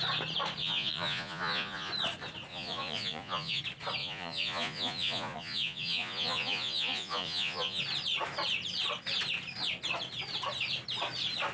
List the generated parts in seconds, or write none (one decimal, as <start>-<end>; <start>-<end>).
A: 0.6-1.9; 2.5-3.6; 4.0-7.8

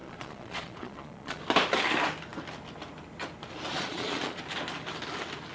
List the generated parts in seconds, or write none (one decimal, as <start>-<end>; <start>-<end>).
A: 0.0-1.4; 3.7-4.4